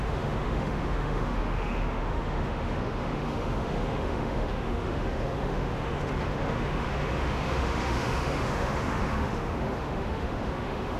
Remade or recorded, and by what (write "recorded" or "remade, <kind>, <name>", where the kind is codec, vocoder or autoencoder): remade, autoencoder, DAC-VAE